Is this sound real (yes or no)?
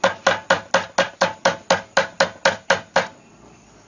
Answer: yes